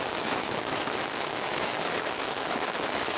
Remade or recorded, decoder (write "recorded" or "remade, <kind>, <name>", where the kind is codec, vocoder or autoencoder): remade, autoencoder, DAC-VAE